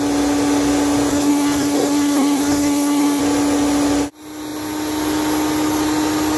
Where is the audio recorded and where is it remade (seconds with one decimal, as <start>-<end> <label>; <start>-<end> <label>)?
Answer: 0.0-1.1 recorded; 1.1-3.2 remade; 3.2-6.4 recorded